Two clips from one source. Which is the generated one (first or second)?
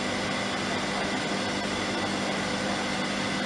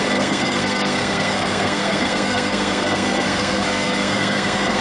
second